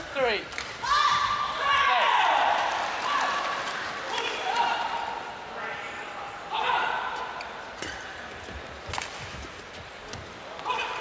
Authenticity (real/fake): real